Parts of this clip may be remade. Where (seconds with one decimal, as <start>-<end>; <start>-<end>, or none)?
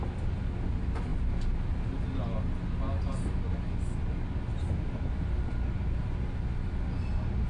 none